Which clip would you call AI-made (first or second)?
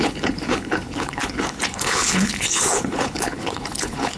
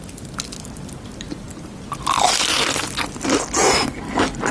first